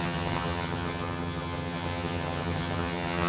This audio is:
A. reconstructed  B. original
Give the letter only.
A